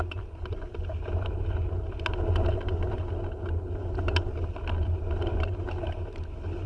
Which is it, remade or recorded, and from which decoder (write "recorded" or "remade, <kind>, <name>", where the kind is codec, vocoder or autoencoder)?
recorded